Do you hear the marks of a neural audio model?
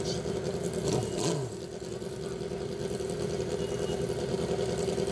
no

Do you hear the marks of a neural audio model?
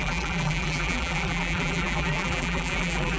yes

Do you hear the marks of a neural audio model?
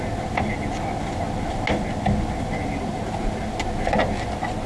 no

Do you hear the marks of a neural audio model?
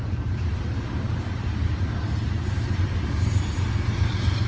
yes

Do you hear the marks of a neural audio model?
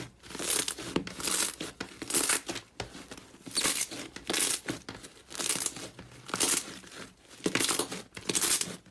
no